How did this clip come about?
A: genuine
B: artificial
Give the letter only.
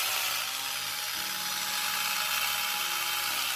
A